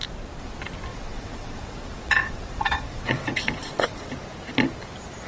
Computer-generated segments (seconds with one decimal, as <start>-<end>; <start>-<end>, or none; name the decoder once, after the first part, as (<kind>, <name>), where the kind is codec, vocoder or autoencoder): 0.9-4.1 (vocoder, WaveNeXt)